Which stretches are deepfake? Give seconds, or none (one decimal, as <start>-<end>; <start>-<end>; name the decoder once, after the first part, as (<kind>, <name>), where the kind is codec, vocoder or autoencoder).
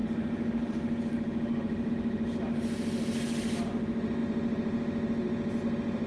none